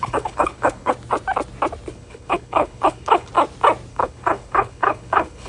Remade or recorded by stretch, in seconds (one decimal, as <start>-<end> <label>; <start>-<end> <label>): 0.0-0.9 remade; 0.9-1.9 recorded; 1.9-3.3 remade; 3.3-3.9 recorded; 3.9-5.5 remade